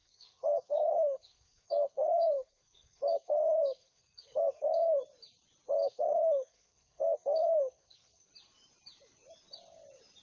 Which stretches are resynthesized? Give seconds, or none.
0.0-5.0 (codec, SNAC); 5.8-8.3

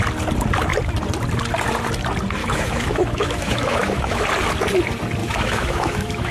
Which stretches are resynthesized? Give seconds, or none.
2.4-4.2 (autoencoder, DAC-VAE); 5.2-6.3